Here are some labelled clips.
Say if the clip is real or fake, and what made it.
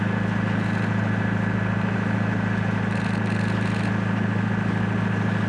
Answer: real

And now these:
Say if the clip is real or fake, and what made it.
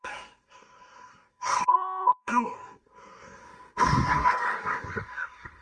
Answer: fake, codec, SNAC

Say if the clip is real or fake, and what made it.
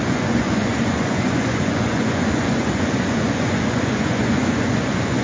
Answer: fake, vocoder, Vocos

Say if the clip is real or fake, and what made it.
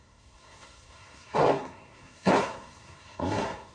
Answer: fake, codec, SNAC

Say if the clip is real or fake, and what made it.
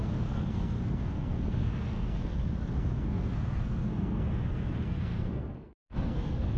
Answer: fake, codec, SNAC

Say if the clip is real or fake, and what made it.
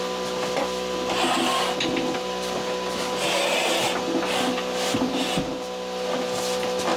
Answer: real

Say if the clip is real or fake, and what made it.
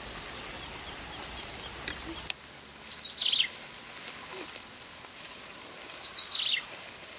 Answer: real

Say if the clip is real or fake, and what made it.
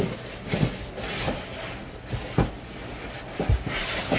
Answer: real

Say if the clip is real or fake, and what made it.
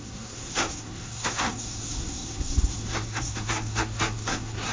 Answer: fake, codec, SNAC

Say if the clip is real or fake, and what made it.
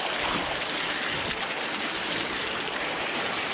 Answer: real